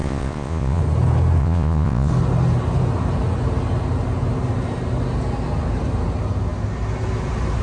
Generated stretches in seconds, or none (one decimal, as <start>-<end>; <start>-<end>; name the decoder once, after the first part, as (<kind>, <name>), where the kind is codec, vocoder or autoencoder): 0.0-0.8 (vocoder, Vocos); 1.4-2.1